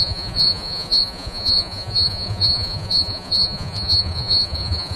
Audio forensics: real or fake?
fake